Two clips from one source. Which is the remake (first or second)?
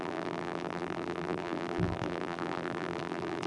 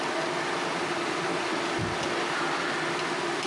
first